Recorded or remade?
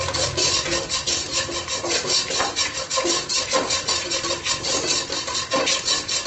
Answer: recorded